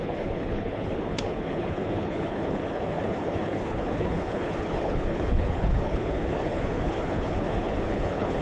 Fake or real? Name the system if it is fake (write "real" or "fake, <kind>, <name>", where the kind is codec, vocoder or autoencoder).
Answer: fake, codec, HILCodec